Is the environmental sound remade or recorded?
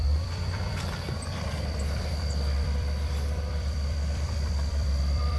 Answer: remade